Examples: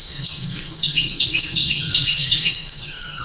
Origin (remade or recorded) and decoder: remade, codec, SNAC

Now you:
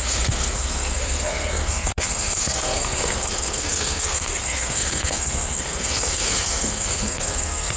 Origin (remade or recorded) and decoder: remade, codec, SNAC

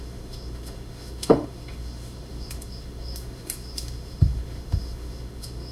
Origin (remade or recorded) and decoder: remade, autoencoder, DAC-VAE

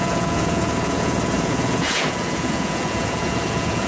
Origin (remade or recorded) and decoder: remade, vocoder, Vocos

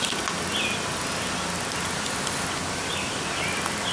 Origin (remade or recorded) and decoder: recorded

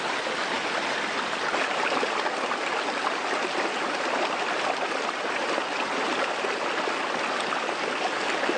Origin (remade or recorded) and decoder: recorded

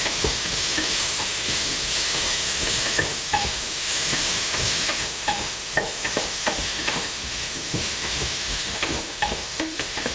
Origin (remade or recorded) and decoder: remade, autoencoder, DAC-VAE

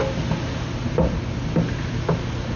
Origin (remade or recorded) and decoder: recorded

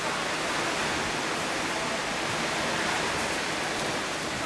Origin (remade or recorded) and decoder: recorded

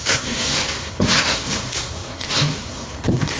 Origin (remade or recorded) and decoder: remade, codec, SNAC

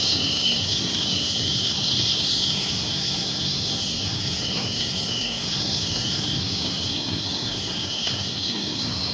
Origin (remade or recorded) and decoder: remade, codec, SNAC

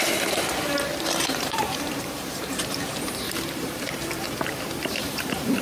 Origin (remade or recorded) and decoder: remade, vocoder, BigVGAN v2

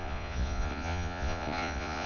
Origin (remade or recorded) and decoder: remade, vocoder, Vocos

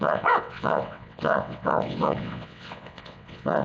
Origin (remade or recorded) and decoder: remade, vocoder, WaveNeXt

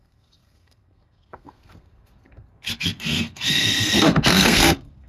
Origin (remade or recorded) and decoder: remade, codec, SNAC